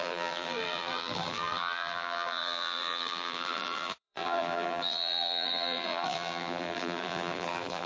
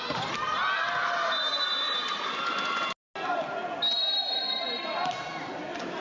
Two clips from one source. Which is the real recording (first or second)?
second